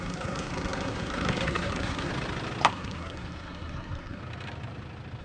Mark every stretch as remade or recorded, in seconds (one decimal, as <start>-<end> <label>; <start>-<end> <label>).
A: 0.0-2.1 remade; 2.1-2.7 recorded; 2.7-4.2 remade; 4.2-5.2 recorded